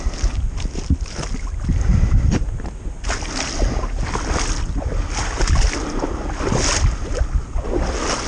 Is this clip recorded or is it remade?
recorded